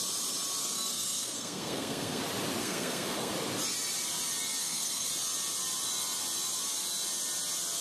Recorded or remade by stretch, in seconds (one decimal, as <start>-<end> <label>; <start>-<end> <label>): 0.0-0.6 recorded; 0.6-2.2 remade; 2.2-2.6 recorded; 2.6-3.3 remade; 3.3-4.6 recorded; 4.6-5.1 remade; 5.1-7.8 recorded